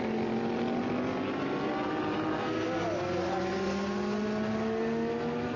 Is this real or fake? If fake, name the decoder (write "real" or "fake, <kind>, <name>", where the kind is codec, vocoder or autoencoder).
real